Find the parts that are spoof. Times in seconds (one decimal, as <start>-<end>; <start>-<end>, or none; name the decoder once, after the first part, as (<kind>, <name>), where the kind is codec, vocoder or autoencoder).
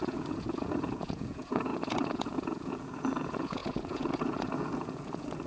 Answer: 0.0-5.5 (vocoder, Vocos)